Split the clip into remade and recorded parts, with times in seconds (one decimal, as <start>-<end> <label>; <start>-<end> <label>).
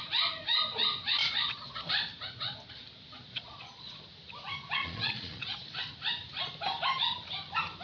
0.0-1.2 recorded; 1.2-1.8 remade; 1.8-3.3 recorded; 3.3-4.0 remade; 4.0-4.8 recorded; 4.8-5.6 remade; 5.6-7.8 recorded